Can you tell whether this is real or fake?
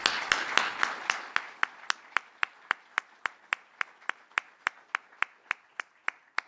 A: real